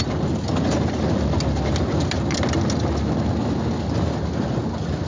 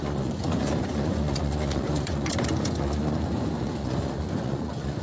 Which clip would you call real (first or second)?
first